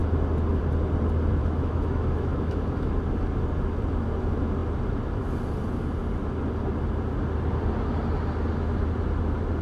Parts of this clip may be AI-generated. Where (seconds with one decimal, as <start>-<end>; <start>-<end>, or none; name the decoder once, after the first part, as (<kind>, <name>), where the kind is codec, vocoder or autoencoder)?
1.4-2.9 (autoencoder, DAC-VAE)

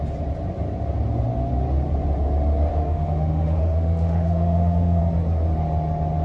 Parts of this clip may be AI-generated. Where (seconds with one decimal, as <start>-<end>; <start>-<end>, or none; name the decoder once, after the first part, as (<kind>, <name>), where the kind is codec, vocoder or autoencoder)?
2.7-5.0 (autoencoder, DAC-VAE)

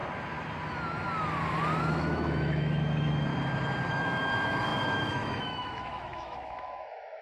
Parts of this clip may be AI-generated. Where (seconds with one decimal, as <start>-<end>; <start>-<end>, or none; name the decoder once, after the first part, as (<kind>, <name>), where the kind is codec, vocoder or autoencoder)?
1.8-3.3 (autoencoder, DAC-VAE); 3.9-7.2

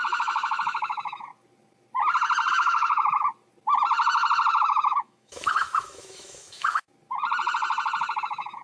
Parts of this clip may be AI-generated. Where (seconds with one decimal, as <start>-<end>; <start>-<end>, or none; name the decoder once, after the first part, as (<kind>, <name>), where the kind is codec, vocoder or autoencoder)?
0.0-1.3 (autoencoder, DAC-VAE); 2.5-3.3; 4.6-6.9; 8.2-8.6

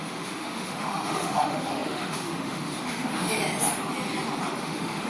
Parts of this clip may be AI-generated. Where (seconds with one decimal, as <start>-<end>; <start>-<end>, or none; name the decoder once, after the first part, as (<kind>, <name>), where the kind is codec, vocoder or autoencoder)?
0.0-3.4 (autoencoder, DAC-VAE); 4.6-5.1

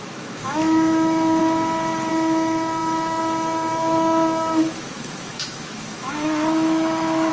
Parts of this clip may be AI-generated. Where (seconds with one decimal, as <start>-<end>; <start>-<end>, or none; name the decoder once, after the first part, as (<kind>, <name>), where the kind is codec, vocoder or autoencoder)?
0.0-1.4 (autoencoder, DAC-VAE); 2.1-7.3

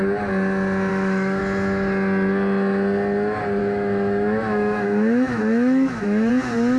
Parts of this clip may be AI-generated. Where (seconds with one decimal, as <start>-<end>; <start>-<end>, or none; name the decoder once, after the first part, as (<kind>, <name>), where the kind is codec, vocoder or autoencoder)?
0.9-1.4 (autoencoder, DAC-VAE); 3.6-6.3

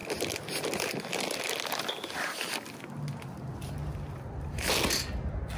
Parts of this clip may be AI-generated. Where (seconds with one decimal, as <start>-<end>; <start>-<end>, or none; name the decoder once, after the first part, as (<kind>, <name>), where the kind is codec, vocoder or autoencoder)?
none